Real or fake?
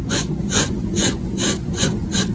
fake